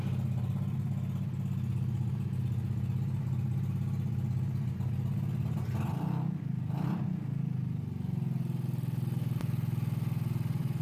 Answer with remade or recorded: recorded